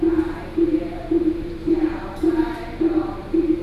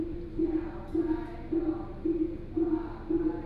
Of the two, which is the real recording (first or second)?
second